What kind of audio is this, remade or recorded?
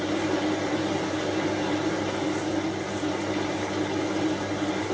recorded